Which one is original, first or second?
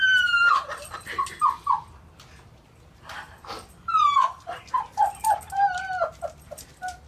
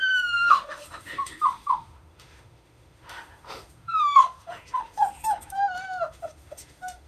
first